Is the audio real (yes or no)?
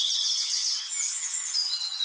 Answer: no